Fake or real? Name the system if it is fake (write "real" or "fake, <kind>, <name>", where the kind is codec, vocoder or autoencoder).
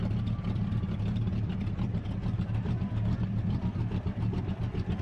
fake, vocoder, BigVGAN v2